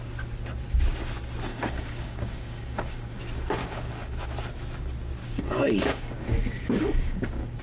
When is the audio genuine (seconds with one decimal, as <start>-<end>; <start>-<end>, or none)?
0.0-1.5; 3.2-3.6; 4.2-5.2